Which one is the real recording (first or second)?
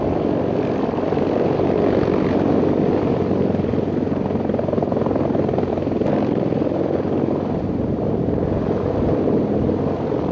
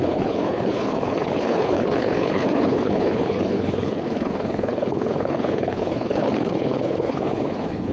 first